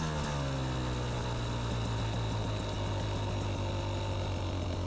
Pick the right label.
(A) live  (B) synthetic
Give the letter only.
A